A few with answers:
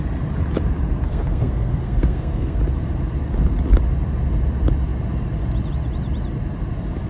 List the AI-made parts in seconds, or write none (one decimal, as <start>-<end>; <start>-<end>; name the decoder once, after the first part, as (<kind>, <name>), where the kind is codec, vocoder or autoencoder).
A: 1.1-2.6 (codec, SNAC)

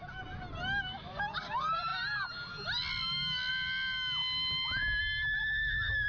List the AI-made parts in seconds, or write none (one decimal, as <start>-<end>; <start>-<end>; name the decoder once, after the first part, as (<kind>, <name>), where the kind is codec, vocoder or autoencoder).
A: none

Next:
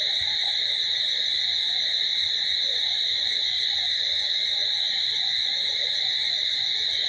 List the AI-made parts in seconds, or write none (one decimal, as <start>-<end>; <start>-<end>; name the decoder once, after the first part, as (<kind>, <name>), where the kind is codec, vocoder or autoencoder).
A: none

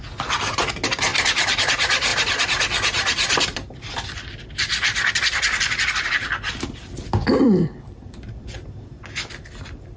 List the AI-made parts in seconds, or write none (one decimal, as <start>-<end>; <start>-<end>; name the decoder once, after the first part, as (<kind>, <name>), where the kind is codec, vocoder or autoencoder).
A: 1.1-1.6 (vocoder, BigVGAN v2); 2.1-5.1; 7.6-8.6

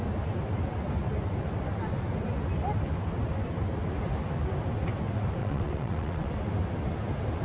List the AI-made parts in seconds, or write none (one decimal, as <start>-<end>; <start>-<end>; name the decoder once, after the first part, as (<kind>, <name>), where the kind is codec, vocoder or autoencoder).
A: 5.4-6.3 (vocoder, WaveNeXt)

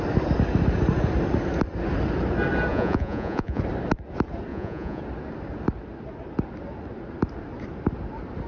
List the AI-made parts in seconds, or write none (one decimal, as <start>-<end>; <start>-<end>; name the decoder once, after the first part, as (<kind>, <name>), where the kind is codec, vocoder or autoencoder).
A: 2.7-3.6 (vocoder, Vocos); 4.5-5.0

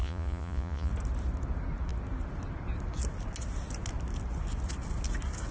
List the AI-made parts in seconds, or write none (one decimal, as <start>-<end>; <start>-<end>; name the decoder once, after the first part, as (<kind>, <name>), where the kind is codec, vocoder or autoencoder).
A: 0.0-0.9 (vocoder, Vocos)